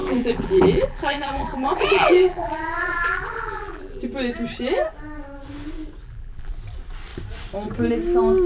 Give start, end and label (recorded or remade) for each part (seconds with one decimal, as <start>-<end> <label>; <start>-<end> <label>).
0.0-4.0 remade; 4.0-6.0 recorded; 6.0-6.5 remade; 6.5-8.5 recorded